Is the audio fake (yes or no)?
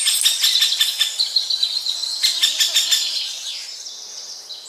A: no